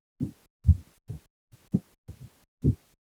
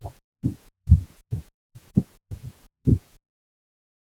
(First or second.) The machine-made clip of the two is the second